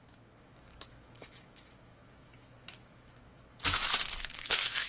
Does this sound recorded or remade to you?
remade